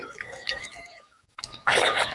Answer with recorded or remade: remade